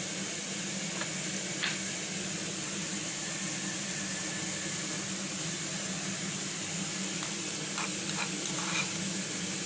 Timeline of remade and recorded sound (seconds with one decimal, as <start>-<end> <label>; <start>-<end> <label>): 0.0-9.7 recorded